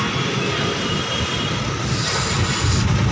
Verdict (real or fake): real